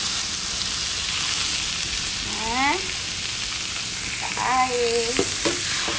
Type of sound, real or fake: real